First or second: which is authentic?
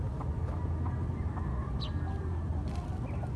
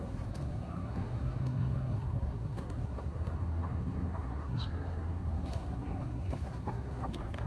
first